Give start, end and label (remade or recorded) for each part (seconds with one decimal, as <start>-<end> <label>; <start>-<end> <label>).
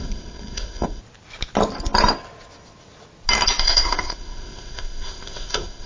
0.0-1.0 remade; 1.0-3.6 recorded; 3.6-5.9 remade